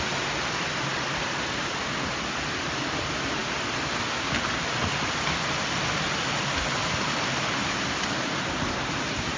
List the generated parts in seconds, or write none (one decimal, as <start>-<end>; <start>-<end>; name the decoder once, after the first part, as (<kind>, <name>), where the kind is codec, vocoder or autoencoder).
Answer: 0.9-1.6 (vocoder, BigVGAN v2); 6.8-9.0